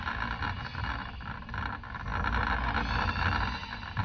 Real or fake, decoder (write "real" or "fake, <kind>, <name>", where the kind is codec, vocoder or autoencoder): real